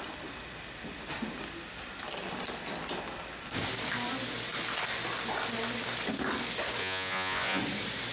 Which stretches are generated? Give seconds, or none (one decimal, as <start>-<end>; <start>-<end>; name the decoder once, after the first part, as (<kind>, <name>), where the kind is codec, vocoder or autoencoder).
6.8-7.6 (vocoder, Vocos)